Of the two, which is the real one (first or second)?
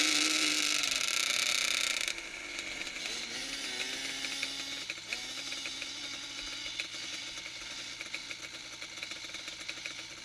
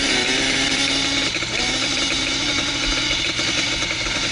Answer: first